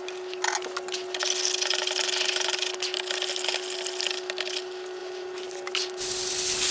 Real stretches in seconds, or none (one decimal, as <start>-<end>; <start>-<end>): 0.0-5.0; 6.3-6.7